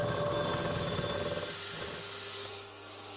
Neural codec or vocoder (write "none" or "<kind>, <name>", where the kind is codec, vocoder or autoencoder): none